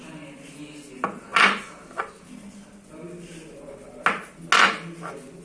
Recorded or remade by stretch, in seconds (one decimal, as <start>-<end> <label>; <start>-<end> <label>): 0.0-5.4 recorded